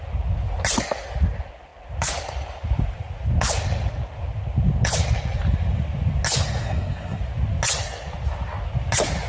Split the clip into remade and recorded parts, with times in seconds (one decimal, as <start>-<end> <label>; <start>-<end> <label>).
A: 0.0-6.6 recorded; 6.6-7.2 remade; 7.2-9.3 recorded